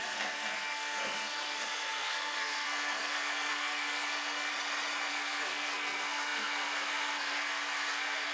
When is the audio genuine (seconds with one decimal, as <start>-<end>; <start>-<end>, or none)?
4.5-5.1